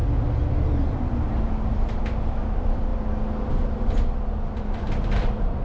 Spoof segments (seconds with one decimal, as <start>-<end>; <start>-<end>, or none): 0.5-2.9; 3.5-5.6